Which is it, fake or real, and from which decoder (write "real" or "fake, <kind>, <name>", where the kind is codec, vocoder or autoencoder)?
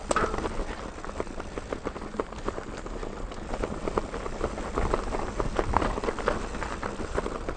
real